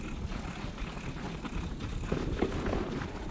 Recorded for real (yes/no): yes